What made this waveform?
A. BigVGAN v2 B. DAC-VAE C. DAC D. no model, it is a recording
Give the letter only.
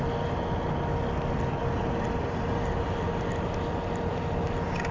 D